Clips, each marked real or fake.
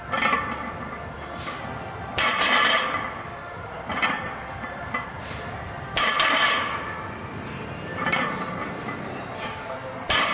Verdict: real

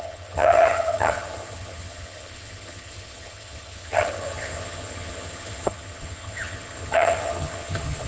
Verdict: fake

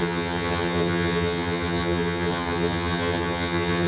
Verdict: fake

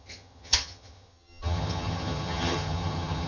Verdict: fake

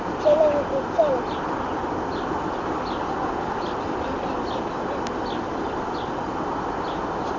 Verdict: real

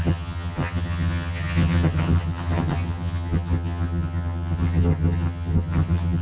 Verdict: fake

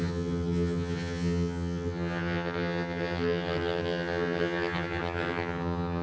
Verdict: fake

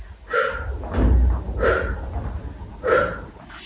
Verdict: real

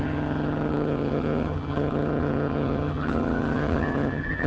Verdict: fake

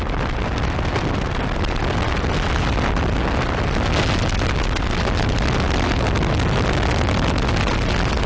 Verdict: real